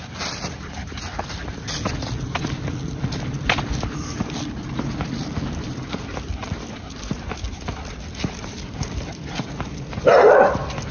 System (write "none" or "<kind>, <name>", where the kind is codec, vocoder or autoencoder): vocoder, BigVGAN v2